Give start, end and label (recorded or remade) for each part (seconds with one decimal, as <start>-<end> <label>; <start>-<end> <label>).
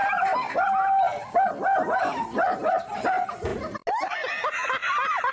0.0-5.3 recorded